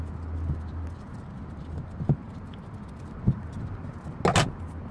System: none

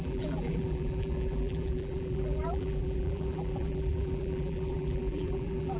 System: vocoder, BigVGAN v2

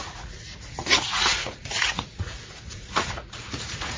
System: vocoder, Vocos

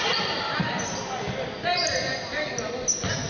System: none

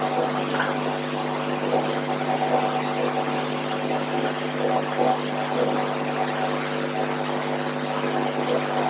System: none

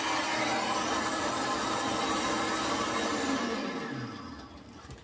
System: none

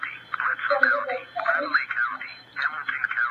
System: none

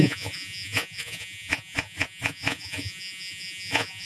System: vocoder, Vocos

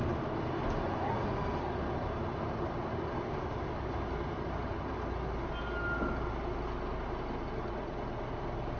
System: none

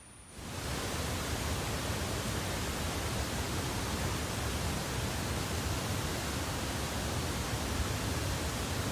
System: none